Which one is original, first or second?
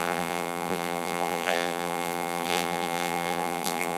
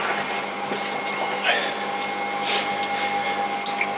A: second